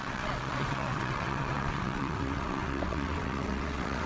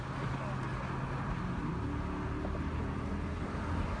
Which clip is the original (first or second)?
second